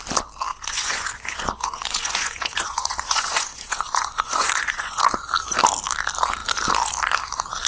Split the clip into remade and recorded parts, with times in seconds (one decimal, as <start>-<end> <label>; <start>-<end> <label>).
0.0-0.5 recorded; 0.5-5.0 remade; 5.0-7.7 recorded